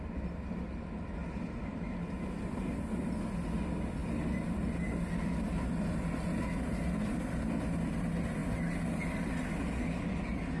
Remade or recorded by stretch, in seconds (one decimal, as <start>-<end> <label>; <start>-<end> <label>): 0.0-10.6 recorded